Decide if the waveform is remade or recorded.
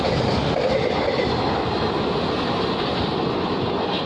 recorded